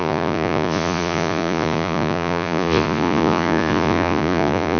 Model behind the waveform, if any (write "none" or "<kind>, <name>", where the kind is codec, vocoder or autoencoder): vocoder, Vocos